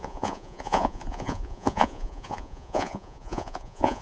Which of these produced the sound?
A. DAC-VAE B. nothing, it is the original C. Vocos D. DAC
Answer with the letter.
C